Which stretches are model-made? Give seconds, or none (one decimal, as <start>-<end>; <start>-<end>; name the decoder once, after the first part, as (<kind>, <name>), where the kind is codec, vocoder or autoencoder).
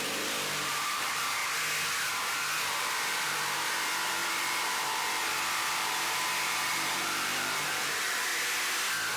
0.0-1.4 (vocoder, BigVGAN v2); 2.1-8.3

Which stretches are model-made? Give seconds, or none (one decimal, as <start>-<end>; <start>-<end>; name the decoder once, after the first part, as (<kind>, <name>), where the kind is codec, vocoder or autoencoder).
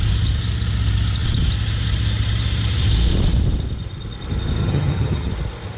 4.6-5.3 (vocoder, HiFi-GAN)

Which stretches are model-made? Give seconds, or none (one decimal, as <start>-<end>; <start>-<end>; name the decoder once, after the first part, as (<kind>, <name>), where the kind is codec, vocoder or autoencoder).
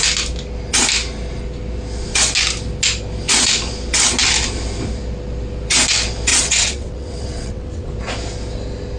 6.3-7.9 (vocoder, WaveNeXt)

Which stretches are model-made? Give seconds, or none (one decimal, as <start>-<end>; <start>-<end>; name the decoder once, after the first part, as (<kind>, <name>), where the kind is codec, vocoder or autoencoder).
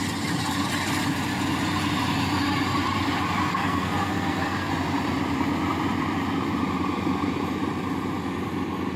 3.5-4.7 (codec, SNAC)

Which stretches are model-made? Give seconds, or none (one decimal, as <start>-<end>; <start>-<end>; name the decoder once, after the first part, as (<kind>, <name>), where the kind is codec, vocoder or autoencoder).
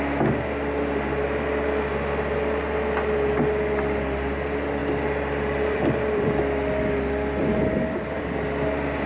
4.8-6.4 (vocoder, BigVGAN v2); 7.4-9.1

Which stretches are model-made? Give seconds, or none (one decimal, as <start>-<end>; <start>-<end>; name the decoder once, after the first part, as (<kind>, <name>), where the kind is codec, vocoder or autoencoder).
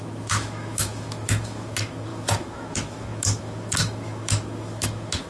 0.0-5.3 (autoencoder, DAC-VAE)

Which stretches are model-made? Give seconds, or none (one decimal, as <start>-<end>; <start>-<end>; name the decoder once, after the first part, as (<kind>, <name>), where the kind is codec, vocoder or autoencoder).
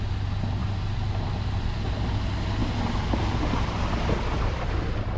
0.6-1.5 (vocoder, BigVGAN v2); 2.6-4.6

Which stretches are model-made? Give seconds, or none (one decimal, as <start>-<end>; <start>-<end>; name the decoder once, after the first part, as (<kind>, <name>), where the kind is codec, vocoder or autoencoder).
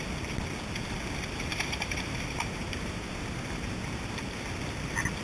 1.5-3.8 (vocoder, BigVGAN v2)